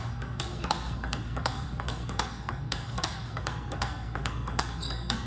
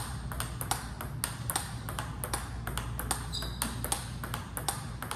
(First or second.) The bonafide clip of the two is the second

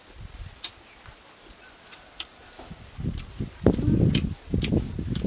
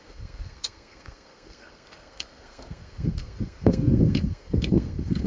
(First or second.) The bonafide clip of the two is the first